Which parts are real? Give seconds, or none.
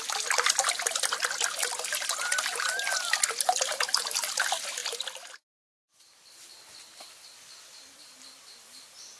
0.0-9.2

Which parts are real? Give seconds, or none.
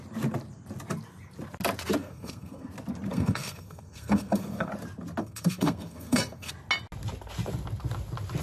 0.0-2.0; 2.7-3.1; 4.7-5.2; 6.5-8.4